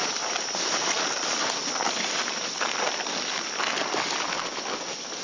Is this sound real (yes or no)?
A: yes